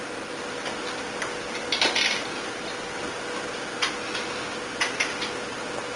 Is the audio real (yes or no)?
yes